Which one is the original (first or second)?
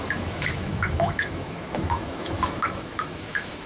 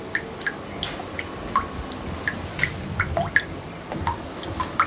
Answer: second